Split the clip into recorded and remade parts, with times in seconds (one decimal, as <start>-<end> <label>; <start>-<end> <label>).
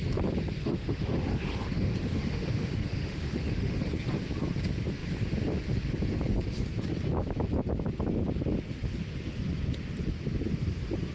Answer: 0.0-0.6 recorded; 0.6-3.9 remade; 3.9-11.1 recorded